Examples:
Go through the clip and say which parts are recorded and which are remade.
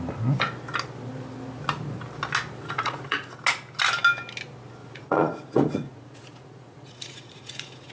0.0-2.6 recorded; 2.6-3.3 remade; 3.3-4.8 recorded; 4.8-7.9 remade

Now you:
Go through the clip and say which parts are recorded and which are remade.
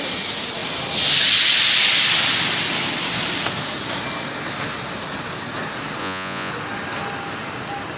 0.0-6.0 recorded; 6.0-6.5 remade; 6.5-8.0 recorded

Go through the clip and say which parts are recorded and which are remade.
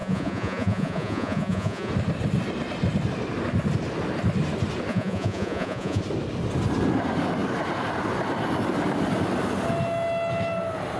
0.0-1.9 remade; 1.9-4.9 recorded; 4.9-6.0 remade; 6.0-11.0 recorded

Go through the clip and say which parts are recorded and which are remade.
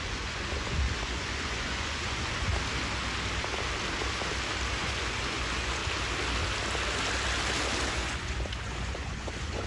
0.0-2.5 remade; 2.5-4.8 recorded; 4.8-5.8 remade; 5.8-7.9 recorded; 7.9-9.7 remade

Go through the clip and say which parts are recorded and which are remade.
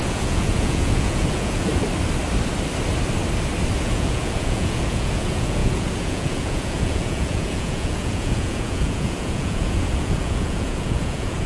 0.0-1.7 remade; 1.7-3.8 recorded; 3.8-11.5 remade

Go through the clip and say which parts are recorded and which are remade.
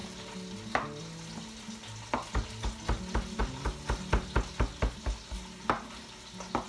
0.0-6.7 recorded